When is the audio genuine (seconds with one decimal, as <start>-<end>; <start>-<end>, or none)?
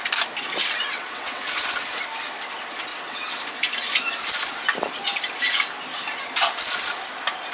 0.0-0.8; 2.0-2.9; 3.4-7.5